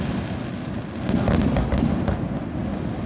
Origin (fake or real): real